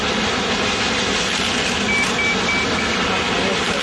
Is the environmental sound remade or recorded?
recorded